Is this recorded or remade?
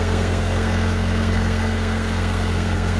remade